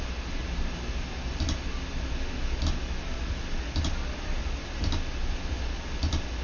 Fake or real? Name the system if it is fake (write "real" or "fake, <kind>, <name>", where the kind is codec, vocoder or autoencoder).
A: real